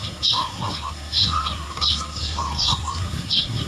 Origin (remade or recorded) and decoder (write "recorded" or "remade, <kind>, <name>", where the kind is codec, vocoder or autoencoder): remade, codec, SNAC